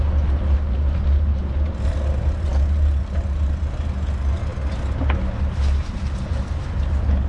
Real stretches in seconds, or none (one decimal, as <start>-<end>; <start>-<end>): 0.0-7.3